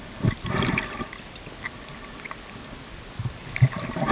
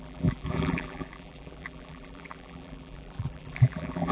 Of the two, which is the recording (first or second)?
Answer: first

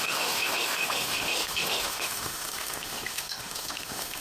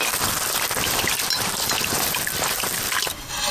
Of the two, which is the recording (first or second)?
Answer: second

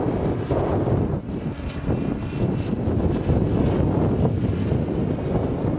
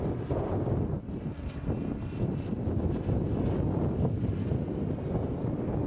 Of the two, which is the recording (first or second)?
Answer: first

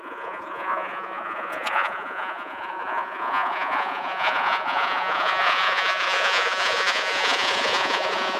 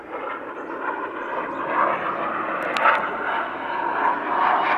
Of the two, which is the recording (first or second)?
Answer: second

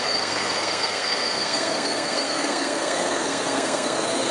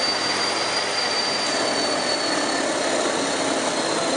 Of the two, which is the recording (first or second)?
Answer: second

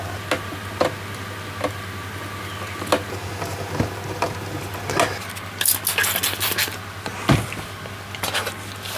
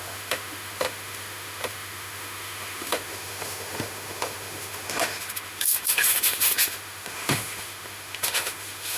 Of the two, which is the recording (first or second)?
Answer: first